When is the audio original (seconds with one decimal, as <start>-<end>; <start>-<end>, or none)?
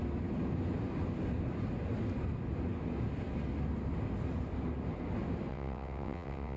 0.0-5.5